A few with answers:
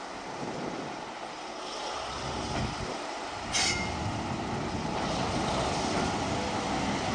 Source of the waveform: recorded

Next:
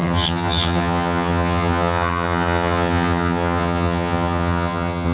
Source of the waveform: remade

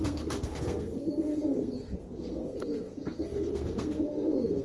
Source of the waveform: remade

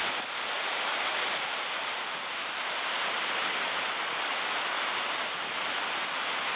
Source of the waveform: recorded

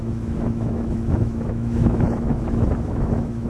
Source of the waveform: remade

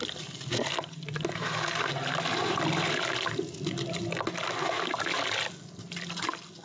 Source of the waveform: recorded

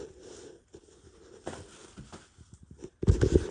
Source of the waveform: recorded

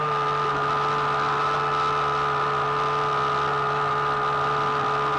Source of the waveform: recorded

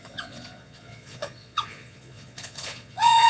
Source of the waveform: remade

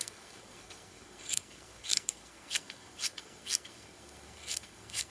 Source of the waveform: remade